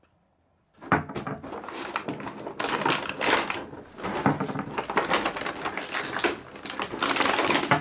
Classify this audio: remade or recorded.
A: recorded